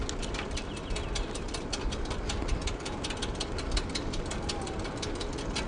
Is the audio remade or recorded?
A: recorded